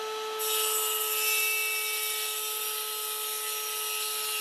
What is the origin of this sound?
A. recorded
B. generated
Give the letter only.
A